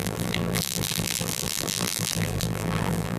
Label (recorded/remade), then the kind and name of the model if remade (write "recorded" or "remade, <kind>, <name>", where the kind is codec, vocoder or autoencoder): remade, vocoder, BigVGAN v2